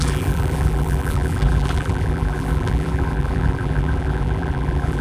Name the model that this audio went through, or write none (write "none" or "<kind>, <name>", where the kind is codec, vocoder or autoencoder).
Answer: vocoder, BigVGAN v2